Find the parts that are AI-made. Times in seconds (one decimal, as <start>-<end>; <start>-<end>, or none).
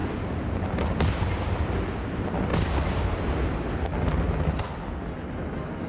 none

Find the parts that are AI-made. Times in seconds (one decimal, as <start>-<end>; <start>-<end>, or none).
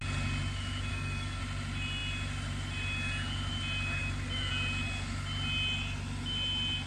0.9-1.4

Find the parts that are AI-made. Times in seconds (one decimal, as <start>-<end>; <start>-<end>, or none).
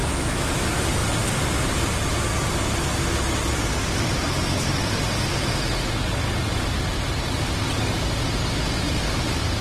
0.0-0.5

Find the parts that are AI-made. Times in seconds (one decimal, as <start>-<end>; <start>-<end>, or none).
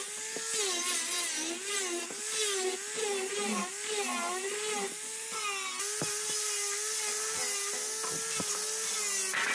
none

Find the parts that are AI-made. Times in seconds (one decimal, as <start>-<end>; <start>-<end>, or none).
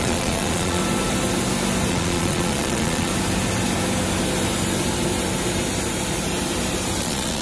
0.0-0.8; 1.9-3.1; 7.0-7.4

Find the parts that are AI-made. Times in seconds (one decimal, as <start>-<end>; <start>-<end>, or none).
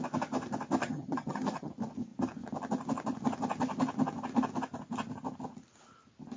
0.8-1.7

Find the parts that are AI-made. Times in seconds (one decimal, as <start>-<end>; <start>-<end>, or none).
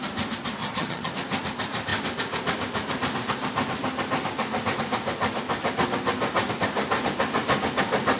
0.6-1.1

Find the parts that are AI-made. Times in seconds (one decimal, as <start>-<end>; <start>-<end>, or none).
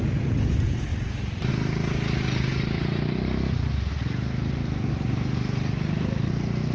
none